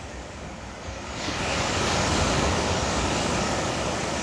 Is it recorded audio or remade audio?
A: remade